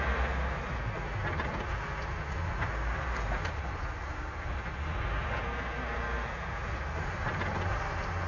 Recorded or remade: recorded